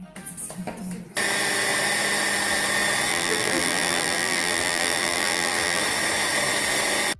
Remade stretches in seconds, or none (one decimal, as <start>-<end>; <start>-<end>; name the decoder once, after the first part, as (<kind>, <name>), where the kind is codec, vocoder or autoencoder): 3.1-5.8 (vocoder, BigVGAN v2)